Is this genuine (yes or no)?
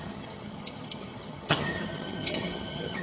no